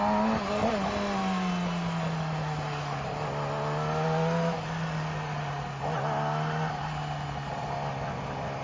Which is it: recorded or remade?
recorded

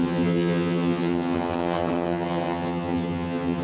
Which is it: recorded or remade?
remade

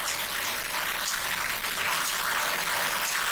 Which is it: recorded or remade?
recorded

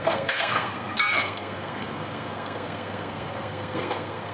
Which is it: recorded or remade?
remade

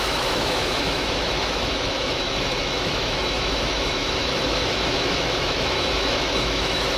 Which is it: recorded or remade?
remade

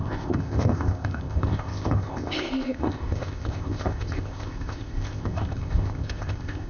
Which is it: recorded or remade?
remade